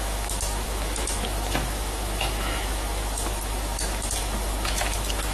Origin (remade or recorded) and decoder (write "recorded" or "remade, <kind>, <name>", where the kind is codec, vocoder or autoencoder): remade, autoencoder, DAC-VAE